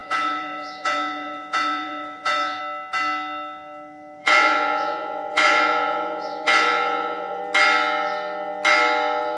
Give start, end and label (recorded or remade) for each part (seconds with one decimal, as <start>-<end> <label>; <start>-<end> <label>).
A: 0.0-2.6 remade; 2.6-4.2 recorded; 4.2-7.4 remade; 7.4-9.4 recorded

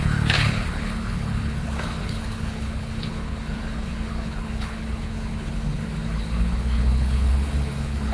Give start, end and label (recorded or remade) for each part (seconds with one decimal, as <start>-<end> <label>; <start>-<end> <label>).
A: 0.0-8.1 remade

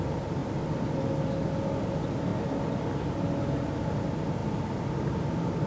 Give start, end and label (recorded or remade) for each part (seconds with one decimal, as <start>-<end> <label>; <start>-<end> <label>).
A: 0.0-5.7 recorded

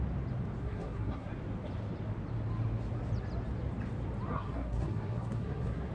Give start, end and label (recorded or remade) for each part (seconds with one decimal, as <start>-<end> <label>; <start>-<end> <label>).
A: 0.0-0.6 recorded; 0.6-1.3 remade; 1.3-4.3 recorded; 4.3-5.9 remade

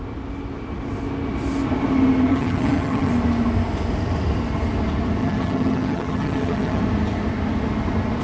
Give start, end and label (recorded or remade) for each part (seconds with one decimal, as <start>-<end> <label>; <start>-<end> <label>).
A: 0.0-2.3 recorded; 2.3-3.1 remade; 3.1-5.2 recorded; 5.2-6.8 remade; 6.8-8.2 recorded

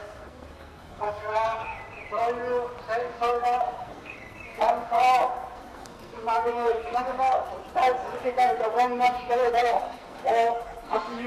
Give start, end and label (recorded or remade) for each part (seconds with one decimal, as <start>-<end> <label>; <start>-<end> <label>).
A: 0.0-2.2 remade; 2.2-3.0 recorded; 3.0-7.5 remade; 7.5-8.2 recorded; 8.2-11.3 remade

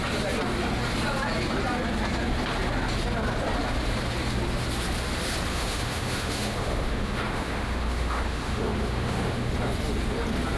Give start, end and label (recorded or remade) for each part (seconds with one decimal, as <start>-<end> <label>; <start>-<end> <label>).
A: 0.0-5.5 recorded; 5.5-9.5 remade; 9.5-10.6 recorded